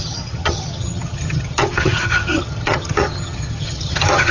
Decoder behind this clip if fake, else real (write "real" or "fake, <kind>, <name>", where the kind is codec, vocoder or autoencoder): fake, vocoder, HiFi-GAN